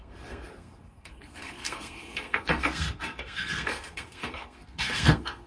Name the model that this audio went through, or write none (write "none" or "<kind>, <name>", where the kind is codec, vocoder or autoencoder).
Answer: codec, SNAC